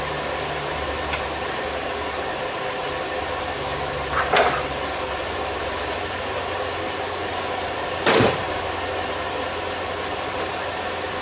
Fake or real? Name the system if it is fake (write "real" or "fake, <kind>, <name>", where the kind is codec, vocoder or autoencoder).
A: real